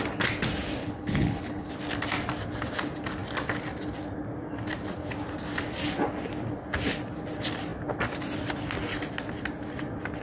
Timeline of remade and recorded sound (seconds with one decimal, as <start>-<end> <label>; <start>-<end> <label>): 0.0-0.8 recorded; 0.8-1.7 remade; 1.7-10.2 recorded